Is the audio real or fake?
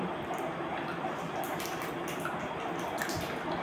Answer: real